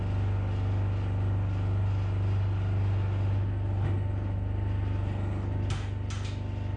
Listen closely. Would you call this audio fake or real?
real